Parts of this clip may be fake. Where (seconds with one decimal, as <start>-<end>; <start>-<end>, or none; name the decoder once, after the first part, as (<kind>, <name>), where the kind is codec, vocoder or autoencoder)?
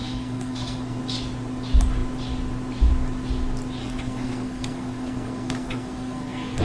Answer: 0.0-1.0 (codec, SNAC); 3.8-6.6